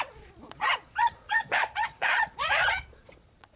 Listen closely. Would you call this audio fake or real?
fake